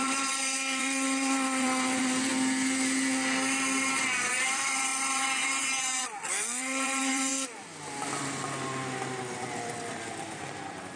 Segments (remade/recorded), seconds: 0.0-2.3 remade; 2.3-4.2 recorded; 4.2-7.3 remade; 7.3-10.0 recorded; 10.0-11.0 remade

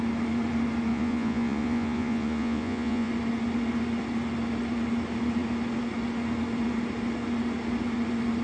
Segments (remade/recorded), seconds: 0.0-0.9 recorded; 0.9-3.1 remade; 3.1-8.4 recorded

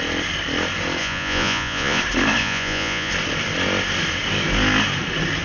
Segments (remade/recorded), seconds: 0.0-1.0 recorded; 1.0-2.0 remade; 2.0-2.4 recorded; 2.4-3.1 remade; 3.1-5.4 recorded